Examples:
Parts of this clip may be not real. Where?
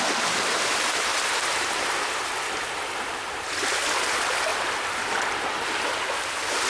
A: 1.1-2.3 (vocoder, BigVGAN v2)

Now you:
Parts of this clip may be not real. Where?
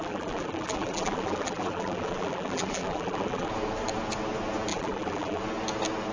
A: 0.0-3.5 (vocoder, BigVGAN v2); 4.7-5.4